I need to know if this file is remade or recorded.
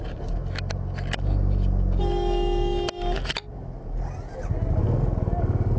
recorded